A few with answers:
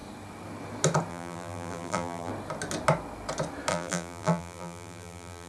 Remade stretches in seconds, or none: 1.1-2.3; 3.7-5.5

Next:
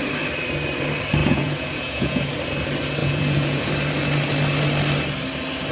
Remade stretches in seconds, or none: 1.2-2.3; 3.0-3.7

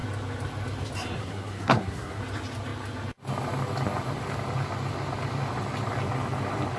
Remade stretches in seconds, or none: 1.2-2.2